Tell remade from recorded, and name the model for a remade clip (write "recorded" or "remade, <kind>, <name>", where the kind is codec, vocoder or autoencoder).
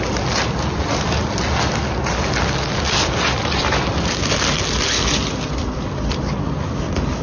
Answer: recorded